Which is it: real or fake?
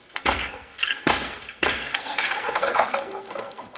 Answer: fake